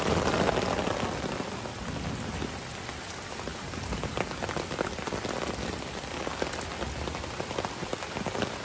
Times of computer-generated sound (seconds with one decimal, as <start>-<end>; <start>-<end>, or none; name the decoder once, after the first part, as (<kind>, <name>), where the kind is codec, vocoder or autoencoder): none